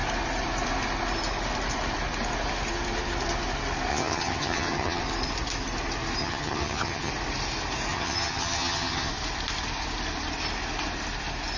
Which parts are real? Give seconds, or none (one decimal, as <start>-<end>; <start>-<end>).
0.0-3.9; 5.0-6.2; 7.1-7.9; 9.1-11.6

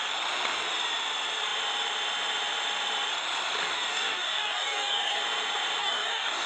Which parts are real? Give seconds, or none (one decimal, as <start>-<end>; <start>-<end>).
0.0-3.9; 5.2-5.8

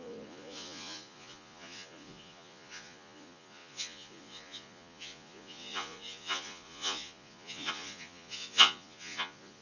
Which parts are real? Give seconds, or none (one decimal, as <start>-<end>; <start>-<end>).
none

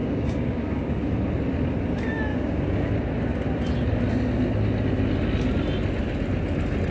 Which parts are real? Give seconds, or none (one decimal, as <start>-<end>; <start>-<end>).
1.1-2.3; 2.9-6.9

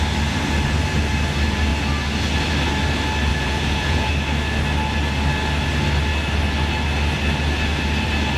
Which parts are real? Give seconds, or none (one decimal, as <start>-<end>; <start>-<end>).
0.0-3.3; 4.1-8.4

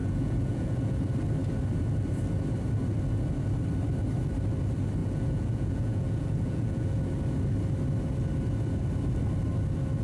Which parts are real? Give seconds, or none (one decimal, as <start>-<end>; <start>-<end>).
1.0-5.0; 7.0-10.0

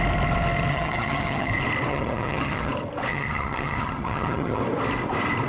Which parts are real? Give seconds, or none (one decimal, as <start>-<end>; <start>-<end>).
0.0-0.7; 1.5-1.9; 2.7-3.1; 4.6-5.5

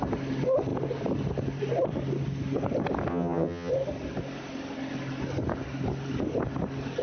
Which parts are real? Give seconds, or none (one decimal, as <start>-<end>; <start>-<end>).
0.0-3.1; 3.7-7.0